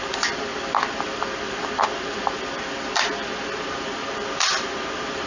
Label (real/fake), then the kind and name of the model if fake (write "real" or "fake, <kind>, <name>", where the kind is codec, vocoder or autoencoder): fake, vocoder, BigVGAN v2